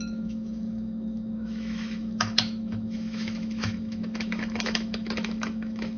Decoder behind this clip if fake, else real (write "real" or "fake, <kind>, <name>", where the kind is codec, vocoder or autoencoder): fake, autoencoder, DAC-VAE